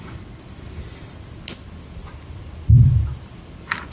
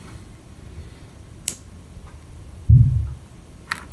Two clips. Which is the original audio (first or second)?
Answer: first